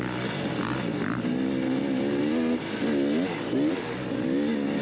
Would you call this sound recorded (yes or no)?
yes